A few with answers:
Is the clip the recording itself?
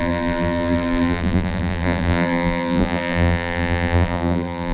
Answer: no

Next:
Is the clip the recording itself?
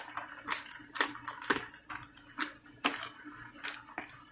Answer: yes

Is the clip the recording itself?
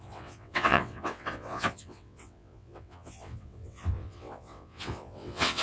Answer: no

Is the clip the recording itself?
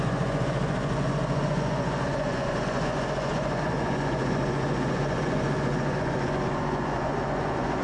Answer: no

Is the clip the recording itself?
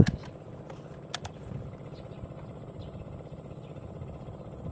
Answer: yes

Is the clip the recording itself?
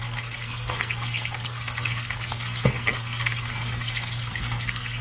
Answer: no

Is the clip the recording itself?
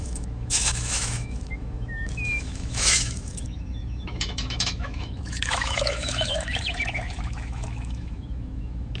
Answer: no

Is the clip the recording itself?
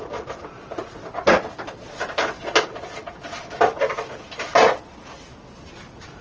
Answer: yes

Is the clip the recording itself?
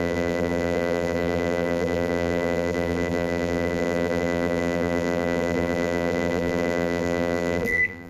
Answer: no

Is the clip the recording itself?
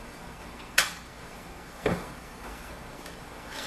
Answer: no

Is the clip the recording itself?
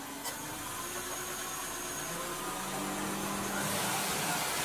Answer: yes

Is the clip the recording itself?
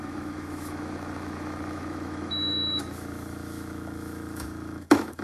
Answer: no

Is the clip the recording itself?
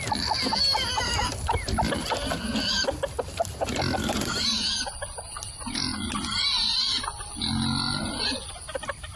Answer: yes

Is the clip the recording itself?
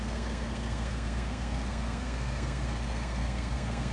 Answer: no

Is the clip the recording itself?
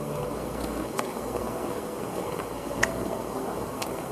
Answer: no